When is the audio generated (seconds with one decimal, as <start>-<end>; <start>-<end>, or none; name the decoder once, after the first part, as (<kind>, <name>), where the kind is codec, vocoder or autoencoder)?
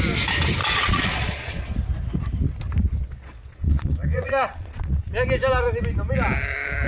0.6-1.6 (vocoder, Vocos); 3.0-5.1